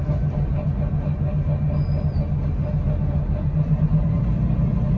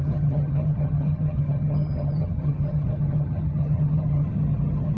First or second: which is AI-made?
second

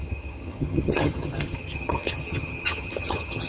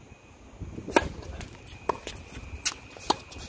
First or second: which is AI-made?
first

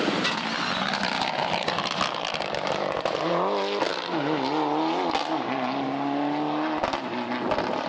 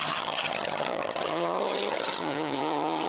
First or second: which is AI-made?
second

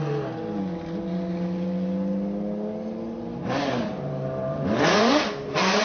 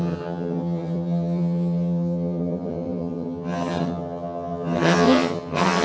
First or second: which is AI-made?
second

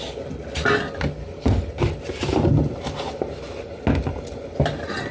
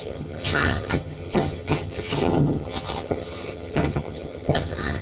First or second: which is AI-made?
second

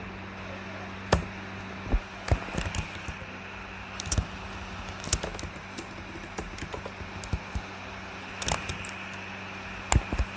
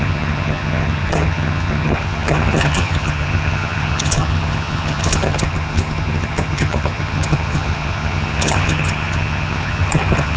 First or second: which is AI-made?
second